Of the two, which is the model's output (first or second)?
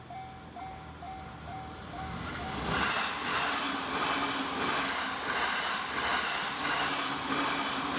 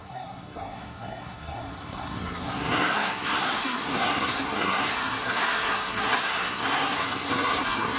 second